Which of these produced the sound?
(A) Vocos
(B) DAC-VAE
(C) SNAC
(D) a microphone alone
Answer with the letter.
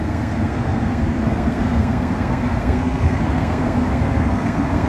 C